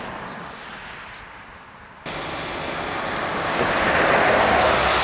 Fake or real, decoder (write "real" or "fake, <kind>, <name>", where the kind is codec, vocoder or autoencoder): real